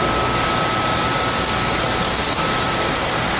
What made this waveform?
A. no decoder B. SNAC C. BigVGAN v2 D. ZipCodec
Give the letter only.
A